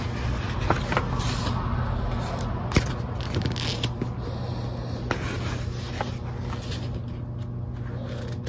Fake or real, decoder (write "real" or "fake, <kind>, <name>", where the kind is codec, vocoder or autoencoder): real